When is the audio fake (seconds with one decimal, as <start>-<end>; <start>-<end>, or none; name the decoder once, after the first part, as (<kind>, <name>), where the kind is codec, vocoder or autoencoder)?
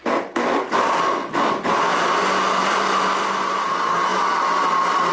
none